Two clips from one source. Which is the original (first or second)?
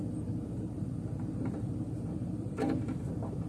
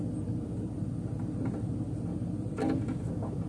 second